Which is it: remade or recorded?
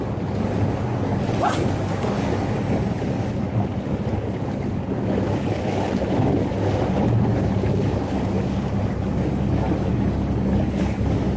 remade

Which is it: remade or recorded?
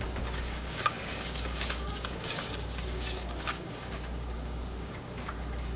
remade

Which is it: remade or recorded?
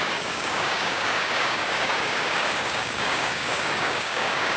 remade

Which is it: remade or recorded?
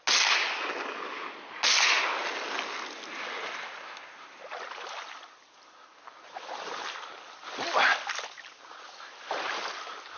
recorded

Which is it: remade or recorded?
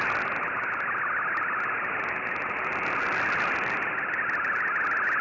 recorded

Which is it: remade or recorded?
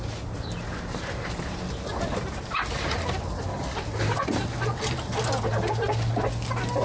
recorded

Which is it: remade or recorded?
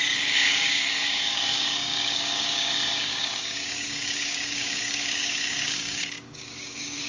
remade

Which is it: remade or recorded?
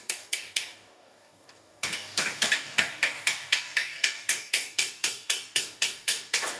remade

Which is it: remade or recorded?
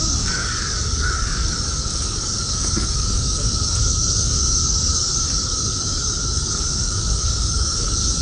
remade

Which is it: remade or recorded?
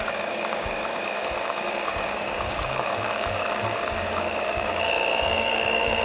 remade